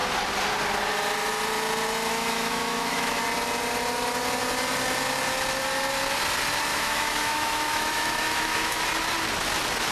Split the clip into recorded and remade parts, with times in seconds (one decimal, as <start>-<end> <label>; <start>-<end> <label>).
0.0-2.1 recorded; 2.1-3.2 remade; 3.2-6.7 recorded; 6.7-8.8 remade; 8.8-9.9 recorded